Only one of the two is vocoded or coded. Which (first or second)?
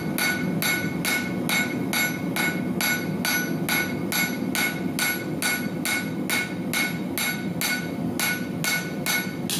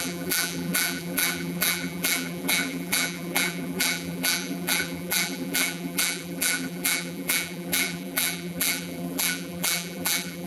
second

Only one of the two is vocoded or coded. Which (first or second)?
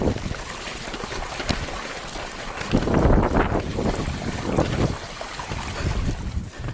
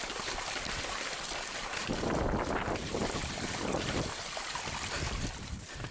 second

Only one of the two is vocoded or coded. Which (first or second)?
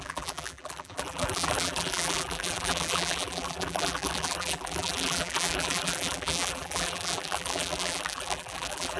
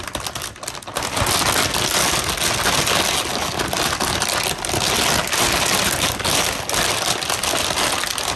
first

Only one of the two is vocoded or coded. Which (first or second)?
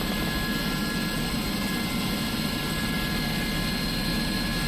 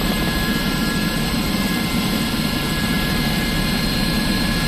second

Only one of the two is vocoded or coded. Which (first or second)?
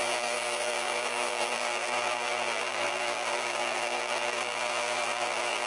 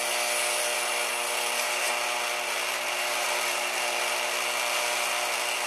first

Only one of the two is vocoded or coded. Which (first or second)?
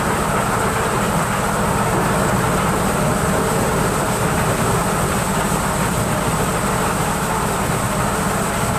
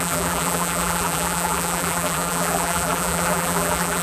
second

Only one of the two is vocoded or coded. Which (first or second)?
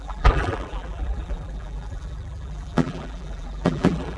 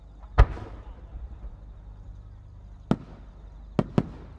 first